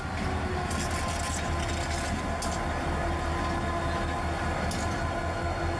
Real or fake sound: real